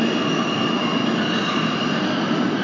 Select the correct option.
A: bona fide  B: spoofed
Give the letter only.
A